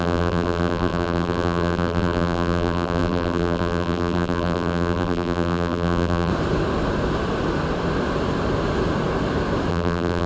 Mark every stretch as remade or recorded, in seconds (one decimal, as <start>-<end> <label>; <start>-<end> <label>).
0.0-6.3 remade; 6.3-9.7 recorded; 9.7-10.3 remade